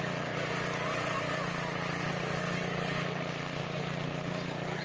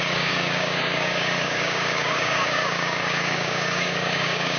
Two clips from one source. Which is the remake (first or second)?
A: second